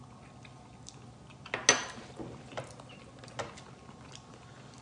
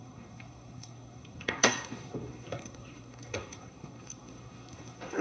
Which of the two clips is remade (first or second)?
second